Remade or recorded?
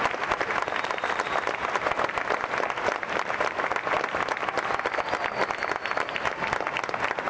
recorded